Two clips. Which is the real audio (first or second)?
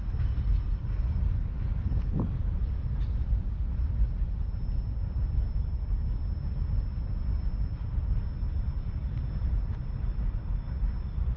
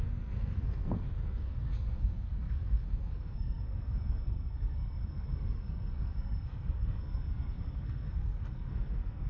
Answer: first